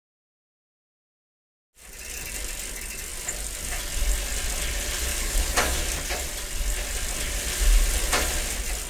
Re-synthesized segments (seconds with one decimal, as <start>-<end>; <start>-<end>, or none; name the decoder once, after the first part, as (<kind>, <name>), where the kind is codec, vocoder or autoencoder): 5.1-5.8 (codec, DAC)